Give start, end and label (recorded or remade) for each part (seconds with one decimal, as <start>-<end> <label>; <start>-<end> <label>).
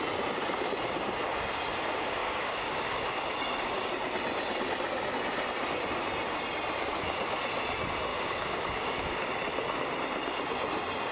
0.0-2.2 recorded; 2.2-3.9 remade; 3.9-8.1 recorded; 8.1-9.3 remade; 9.3-11.1 recorded